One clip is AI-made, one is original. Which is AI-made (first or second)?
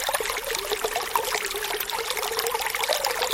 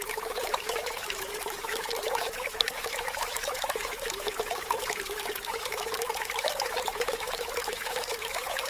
second